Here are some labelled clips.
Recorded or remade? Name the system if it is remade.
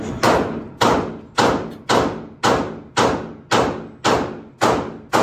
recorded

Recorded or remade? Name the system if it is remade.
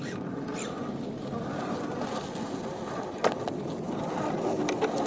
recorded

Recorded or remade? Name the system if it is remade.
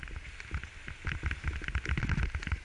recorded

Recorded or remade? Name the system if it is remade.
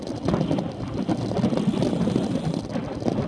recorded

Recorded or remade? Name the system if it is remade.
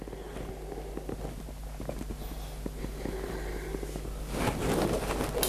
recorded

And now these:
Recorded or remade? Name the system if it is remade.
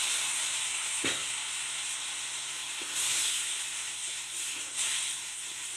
remade, codec, SNAC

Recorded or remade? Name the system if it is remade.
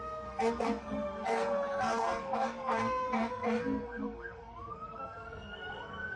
remade, codec, SNAC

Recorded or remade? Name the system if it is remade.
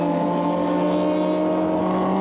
recorded